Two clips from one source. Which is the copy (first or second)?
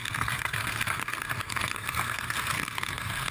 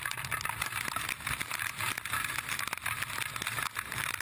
first